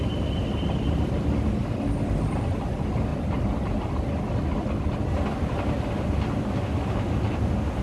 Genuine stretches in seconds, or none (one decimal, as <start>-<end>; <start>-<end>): 0.0-3.1; 3.9-7.8